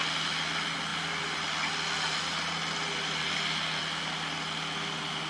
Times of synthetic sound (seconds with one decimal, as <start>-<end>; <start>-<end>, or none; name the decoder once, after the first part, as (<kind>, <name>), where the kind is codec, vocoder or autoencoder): 0.9-3.8 (vocoder, BigVGAN v2)